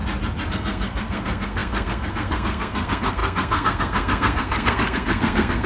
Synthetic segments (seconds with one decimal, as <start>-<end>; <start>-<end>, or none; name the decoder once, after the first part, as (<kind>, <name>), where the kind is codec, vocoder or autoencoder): 0.5-5.7 (codec, SNAC)